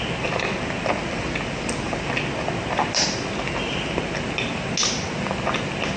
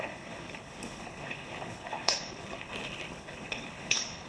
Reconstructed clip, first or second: second